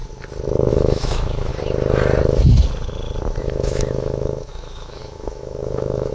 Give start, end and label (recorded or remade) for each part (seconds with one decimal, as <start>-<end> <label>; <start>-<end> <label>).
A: 0.0-0.7 recorded; 0.7-1.5 remade; 1.5-3.4 recorded; 3.4-6.1 remade